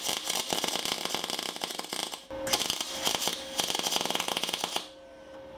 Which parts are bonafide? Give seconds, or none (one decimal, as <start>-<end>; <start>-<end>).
0.0-5.6